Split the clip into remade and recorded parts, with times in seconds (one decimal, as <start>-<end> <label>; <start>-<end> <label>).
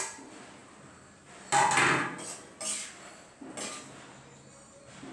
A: 0.0-5.1 recorded